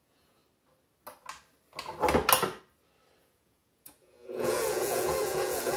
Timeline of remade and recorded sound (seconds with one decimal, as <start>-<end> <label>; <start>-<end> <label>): 0.0-0.4 remade; 0.4-3.2 recorded; 3.2-5.8 remade